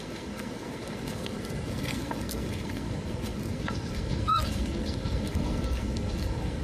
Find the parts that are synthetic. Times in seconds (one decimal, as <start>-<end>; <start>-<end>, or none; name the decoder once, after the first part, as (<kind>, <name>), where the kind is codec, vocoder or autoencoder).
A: 0.0-6.6 (codec, SNAC)